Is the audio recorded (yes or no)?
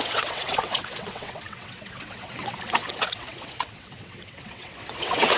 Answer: no